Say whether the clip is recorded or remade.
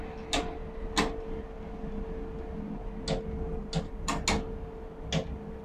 recorded